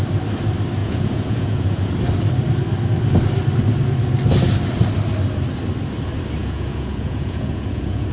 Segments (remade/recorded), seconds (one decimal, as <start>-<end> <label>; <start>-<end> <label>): 0.0-0.8 recorded; 0.8-1.9 remade; 1.9-6.4 recorded; 6.4-8.1 remade